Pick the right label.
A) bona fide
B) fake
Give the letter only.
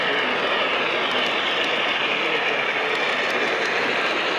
A